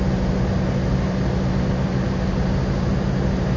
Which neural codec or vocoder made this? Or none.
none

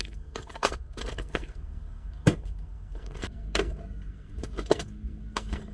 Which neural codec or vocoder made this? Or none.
codec, SNAC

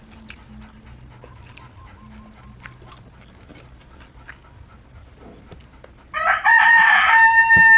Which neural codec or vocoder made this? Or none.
none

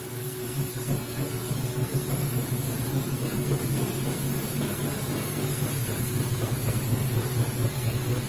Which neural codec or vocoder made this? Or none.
codec, SNAC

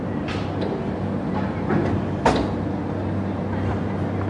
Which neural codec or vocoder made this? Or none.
none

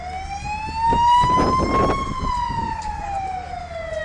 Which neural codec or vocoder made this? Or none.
none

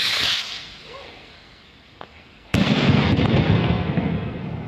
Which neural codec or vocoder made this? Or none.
codec, SNAC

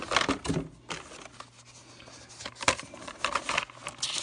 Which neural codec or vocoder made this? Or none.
none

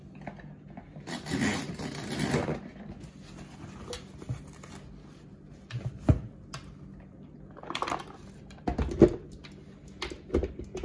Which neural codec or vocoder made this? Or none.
none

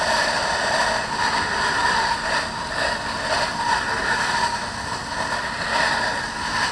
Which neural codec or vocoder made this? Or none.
none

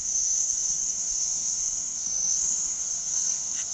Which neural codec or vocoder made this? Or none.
codec, SNAC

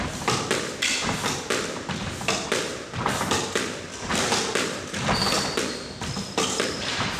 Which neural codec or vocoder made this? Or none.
none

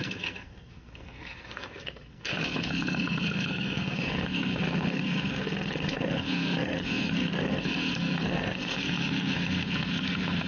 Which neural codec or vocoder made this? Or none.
codec, SNAC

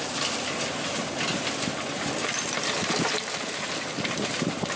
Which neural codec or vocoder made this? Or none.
none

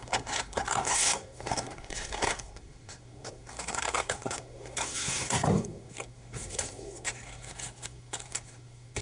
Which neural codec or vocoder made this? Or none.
codec, SNAC